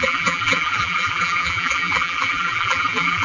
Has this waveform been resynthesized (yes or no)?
yes